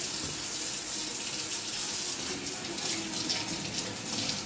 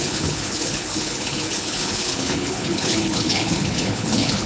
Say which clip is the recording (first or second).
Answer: first